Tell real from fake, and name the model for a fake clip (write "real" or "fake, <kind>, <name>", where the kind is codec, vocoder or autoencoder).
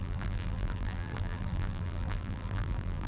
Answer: fake, vocoder, BigVGAN v2